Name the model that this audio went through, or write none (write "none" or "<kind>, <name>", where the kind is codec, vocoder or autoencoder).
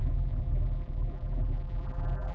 vocoder, BigVGAN v2